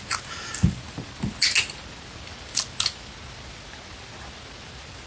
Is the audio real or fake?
real